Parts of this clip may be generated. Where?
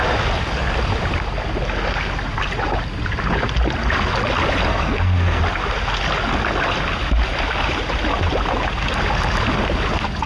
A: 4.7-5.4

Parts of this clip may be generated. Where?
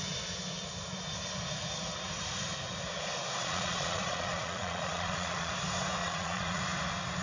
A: 3.4-5.5; 6.0-6.6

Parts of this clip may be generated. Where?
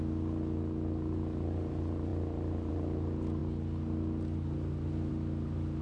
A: none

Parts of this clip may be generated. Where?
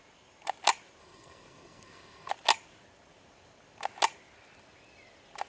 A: 1.0-2.3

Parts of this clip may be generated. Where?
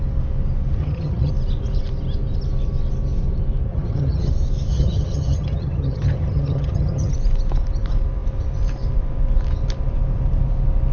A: 0.8-1.3; 3.7-4.3; 4.7-7.1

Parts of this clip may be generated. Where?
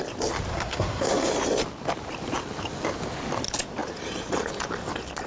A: 0.5-1.3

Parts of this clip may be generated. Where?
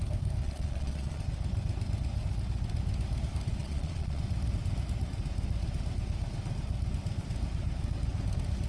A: 0.4-1.2; 3.6-4.2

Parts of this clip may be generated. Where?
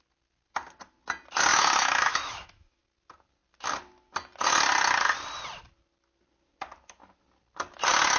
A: 1.5-2.8